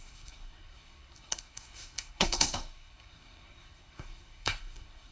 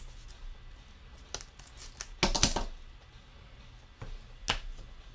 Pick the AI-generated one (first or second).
first